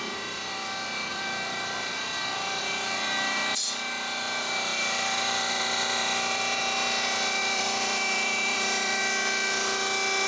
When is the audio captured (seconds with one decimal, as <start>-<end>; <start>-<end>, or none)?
0.0-1.1; 2.6-4.7; 6.6-7.4; 9.0-10.3